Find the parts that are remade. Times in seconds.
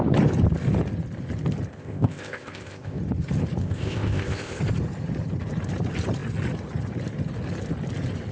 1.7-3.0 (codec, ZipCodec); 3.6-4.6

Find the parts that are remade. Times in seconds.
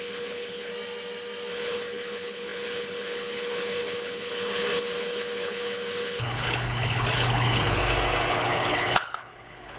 0.0-0.7 (codec, HILCodec); 1.5-7.8; 8.3-9.8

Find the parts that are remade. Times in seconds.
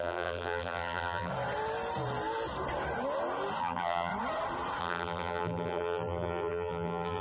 0.0-1.3 (vocoder, BigVGAN v2); 3.6-4.1; 4.8-7.2